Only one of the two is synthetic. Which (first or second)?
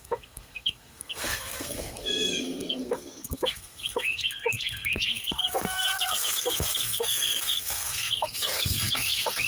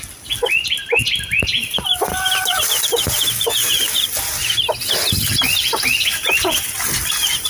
first